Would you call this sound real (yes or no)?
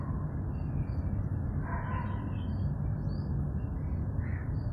yes